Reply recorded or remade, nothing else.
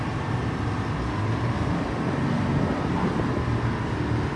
recorded